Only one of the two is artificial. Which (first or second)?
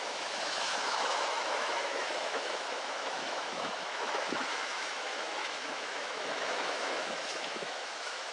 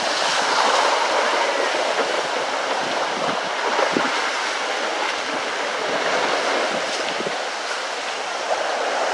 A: first